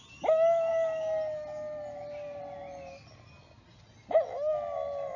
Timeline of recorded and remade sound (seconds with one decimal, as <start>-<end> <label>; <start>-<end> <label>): 0.0-5.2 recorded